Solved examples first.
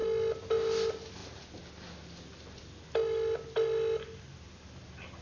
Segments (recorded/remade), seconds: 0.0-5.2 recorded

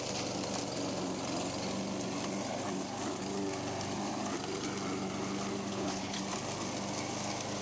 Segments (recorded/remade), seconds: 0.0-5.7 recorded; 5.7-6.2 remade; 6.2-7.6 recorded

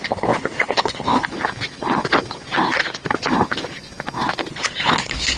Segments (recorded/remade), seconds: 0.0-1.3 remade; 1.3-4.5 recorded; 4.5-5.4 remade

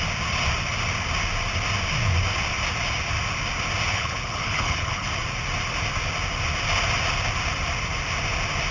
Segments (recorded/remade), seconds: 0.0-3.9 recorded; 3.9-5.1 remade; 5.1-8.7 recorded

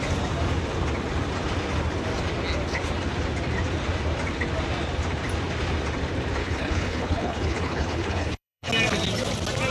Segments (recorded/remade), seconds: 0.0-6.4 recorded; 6.4-8.7 remade; 8.7-9.7 recorded